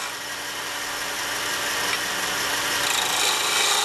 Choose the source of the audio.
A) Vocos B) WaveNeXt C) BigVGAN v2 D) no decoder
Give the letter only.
D